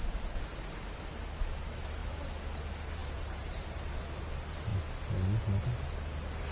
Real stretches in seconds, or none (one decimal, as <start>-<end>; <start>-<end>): 0.0-3.0; 3.9-6.5